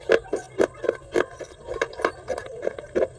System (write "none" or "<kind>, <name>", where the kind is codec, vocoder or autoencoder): none